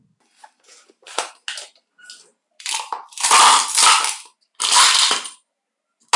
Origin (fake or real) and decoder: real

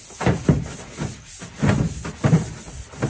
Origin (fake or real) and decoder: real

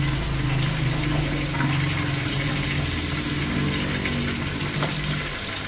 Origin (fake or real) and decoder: real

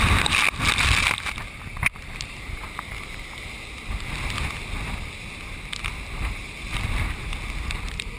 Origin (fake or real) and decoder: real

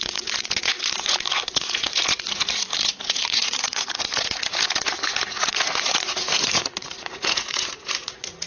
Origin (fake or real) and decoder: fake, vocoder, Vocos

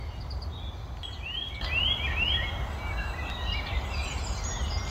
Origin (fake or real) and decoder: real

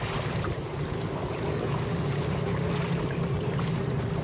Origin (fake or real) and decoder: real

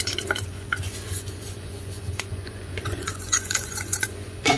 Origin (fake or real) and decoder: fake, vocoder, Vocos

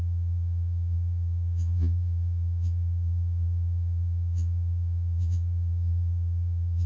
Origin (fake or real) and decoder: fake, vocoder, Vocos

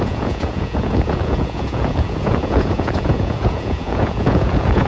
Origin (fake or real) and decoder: fake, vocoder, Vocos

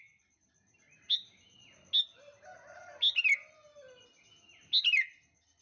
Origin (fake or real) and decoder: real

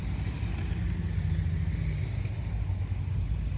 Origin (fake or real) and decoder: real